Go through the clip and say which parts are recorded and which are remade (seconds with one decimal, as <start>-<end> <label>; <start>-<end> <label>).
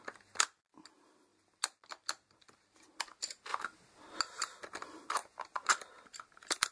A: 0.0-5.2 recorded; 5.2-6.2 remade; 6.2-6.7 recorded